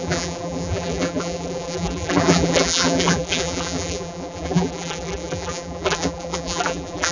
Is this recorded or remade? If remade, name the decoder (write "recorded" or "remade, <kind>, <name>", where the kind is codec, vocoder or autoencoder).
remade, vocoder, BigVGAN v2